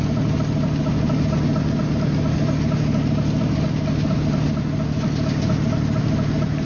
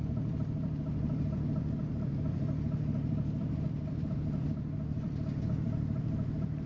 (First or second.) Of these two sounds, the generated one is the second